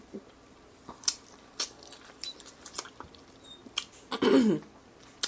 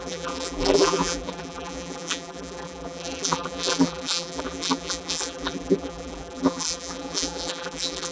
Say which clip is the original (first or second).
first